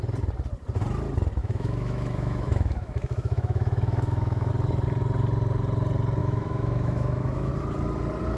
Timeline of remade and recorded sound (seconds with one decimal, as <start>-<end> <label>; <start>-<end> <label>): 0.0-1.4 recorded; 1.4-4.5 remade; 4.5-6.2 recorded; 6.2-7.5 remade; 7.5-8.4 recorded